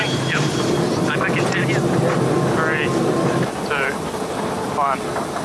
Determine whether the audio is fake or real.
real